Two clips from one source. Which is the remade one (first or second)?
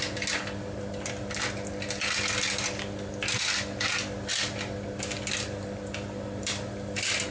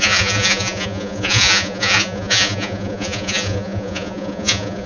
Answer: second